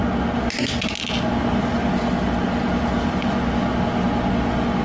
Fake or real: real